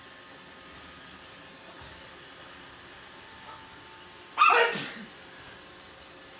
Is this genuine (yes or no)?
yes